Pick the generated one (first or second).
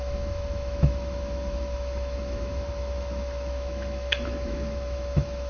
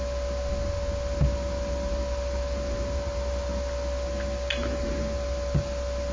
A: first